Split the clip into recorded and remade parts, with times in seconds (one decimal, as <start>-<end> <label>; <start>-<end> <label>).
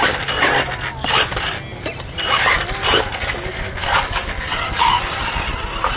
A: 0.0-3.8 recorded; 3.8-5.0 remade; 5.0-6.0 recorded